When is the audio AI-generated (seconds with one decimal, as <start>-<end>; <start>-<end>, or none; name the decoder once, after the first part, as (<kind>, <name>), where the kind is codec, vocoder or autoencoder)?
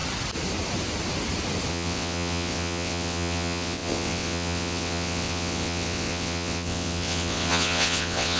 1.7-8.4 (vocoder, WaveNeXt)